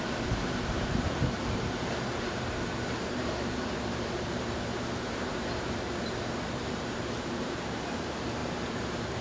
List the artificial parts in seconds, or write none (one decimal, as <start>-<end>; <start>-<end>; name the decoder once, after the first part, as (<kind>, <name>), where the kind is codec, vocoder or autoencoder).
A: 0.0-9.2 (vocoder, BigVGAN v2)